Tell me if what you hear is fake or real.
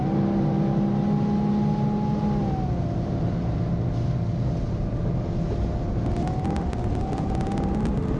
real